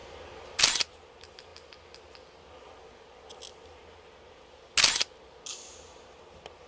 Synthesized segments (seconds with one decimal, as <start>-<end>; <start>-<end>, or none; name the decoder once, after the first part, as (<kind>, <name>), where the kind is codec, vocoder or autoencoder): none